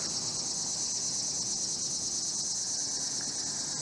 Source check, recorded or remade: recorded